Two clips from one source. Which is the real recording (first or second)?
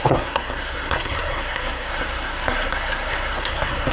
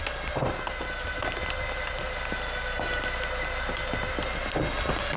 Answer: second